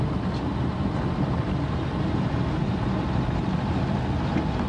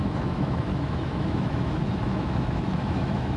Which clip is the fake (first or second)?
second